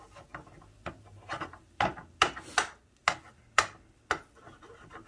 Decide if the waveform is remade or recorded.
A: recorded